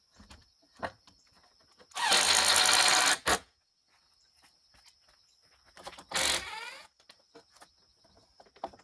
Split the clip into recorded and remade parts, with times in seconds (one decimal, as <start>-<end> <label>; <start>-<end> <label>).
0.0-0.4 recorded; 0.4-1.0 remade; 1.0-8.8 recorded